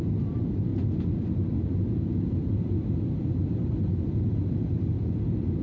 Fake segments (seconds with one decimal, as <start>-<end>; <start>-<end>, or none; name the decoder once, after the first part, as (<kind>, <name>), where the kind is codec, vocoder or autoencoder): none